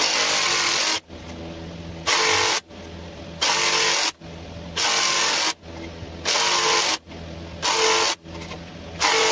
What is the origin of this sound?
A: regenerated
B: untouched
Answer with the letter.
B